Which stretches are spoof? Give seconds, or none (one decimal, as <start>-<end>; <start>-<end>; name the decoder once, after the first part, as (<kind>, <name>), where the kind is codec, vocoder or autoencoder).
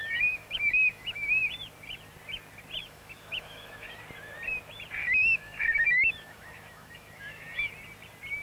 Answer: 0.0-1.5 (autoencoder, DAC-VAE); 2.8-4.0; 5.0-7.7